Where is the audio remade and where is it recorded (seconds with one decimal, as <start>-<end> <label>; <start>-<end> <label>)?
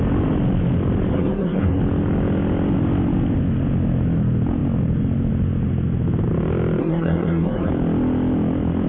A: 0.0-1.1 recorded; 1.1-1.8 remade; 1.8-6.8 recorded; 6.8-7.7 remade; 7.7-8.9 recorded